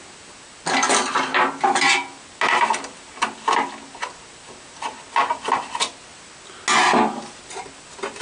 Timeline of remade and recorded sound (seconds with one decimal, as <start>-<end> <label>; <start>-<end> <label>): 0.0-8.2 recorded